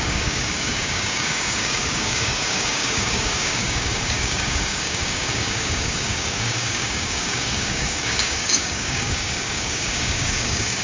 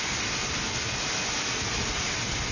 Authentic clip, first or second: second